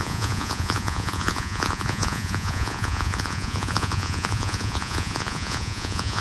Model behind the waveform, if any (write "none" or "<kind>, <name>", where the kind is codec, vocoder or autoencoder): vocoder, Vocos